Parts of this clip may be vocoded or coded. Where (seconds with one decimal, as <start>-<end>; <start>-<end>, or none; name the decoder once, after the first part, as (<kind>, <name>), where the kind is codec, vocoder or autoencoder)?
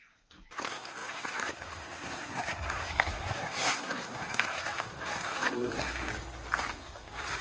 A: 0.0-6.1 (codec, SNAC); 6.7-7.4